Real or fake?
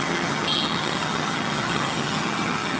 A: fake